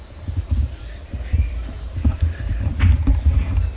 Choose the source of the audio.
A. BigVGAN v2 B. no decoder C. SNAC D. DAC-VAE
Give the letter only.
A